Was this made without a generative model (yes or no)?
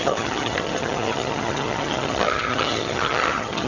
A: no